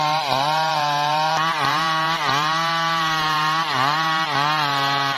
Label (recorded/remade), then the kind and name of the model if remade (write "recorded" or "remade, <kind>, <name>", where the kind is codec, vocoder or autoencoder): remade, vocoder, BigVGAN v2